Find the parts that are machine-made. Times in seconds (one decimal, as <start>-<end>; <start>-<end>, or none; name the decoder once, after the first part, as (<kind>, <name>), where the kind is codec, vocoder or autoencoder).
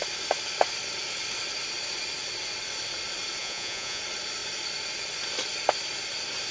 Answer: 3.4-4.0 (vocoder, Vocos)